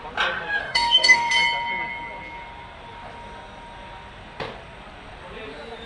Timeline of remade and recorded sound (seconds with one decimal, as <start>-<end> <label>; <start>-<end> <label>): 0.0-0.6 recorded; 0.6-1.3 remade; 1.3-5.9 recorded